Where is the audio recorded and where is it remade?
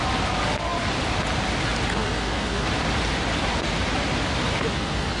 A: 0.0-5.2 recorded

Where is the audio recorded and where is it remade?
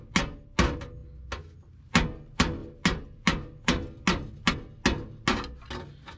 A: 0.0-6.2 recorded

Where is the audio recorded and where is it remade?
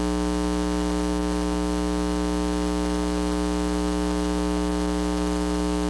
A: 0.0-5.9 recorded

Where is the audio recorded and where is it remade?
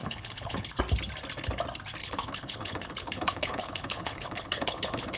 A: 0.0-0.8 remade; 0.8-2.0 recorded; 2.0-5.2 remade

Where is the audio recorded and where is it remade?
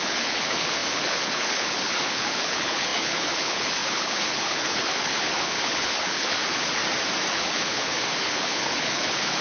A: 0.0-6.8 remade; 6.8-7.3 recorded; 7.3-9.4 remade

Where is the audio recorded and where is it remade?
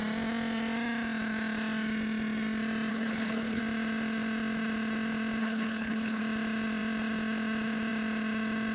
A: 0.0-2.9 recorded; 2.9-3.6 remade; 3.6-5.4 recorded; 5.4-6.2 remade; 6.2-8.7 recorded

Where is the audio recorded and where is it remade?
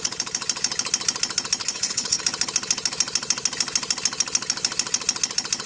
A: 0.0-1.6 recorded; 1.6-2.2 remade; 2.2-5.7 recorded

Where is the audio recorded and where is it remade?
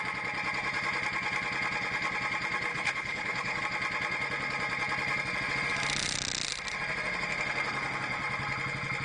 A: 0.0-2.7 recorded; 2.7-3.6 remade; 3.6-9.0 recorded